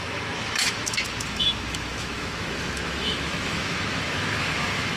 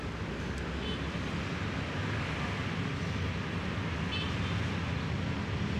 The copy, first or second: first